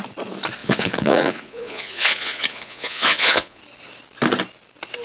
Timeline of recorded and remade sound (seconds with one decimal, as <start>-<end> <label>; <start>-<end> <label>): 0.0-0.6 recorded; 0.6-3.6 remade; 3.6-5.0 recorded